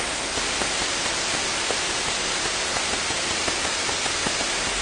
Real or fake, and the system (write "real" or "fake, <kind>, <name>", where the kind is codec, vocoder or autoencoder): real